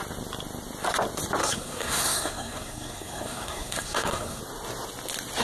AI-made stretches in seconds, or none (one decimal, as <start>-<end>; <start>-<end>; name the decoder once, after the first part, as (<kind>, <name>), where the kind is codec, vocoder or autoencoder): 1.4-4.4 (codec, SNAC)